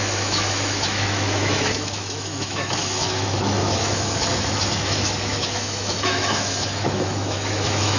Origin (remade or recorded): remade